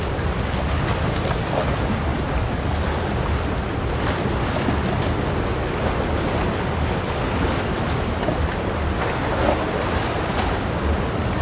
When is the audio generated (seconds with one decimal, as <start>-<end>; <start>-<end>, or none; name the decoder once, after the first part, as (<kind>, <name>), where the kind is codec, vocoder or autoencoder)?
none